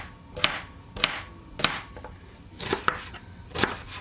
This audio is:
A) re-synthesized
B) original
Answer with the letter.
B